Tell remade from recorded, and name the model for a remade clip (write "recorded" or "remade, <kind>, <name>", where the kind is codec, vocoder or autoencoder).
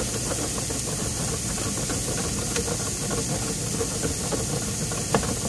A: recorded